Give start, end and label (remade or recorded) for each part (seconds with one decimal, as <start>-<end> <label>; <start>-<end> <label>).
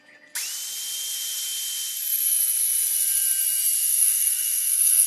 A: 0.0-3.8 recorded; 3.8-5.1 remade